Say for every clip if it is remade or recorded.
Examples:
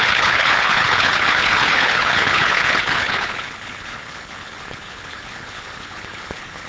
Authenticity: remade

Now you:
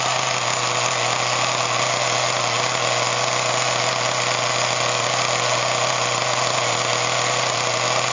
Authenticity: recorded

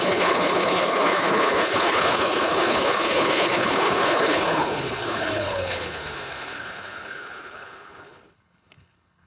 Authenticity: remade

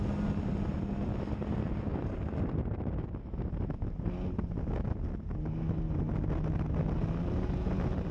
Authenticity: recorded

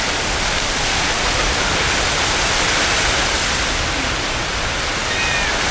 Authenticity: recorded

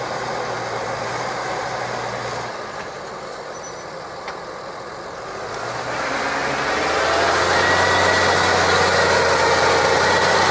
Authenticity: recorded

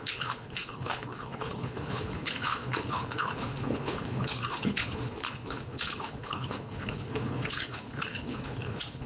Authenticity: remade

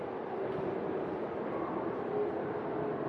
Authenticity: recorded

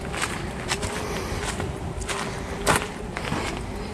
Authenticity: recorded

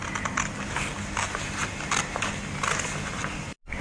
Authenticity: recorded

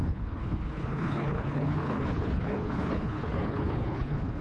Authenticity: remade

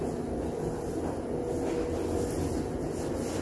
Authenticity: recorded